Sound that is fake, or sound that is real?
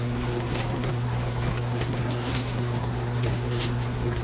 fake